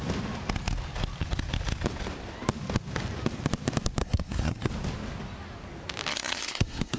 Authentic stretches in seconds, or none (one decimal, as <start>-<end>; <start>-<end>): 0.0-4.0; 4.7-6.1